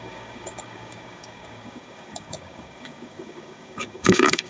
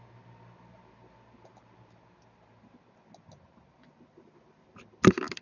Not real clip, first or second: first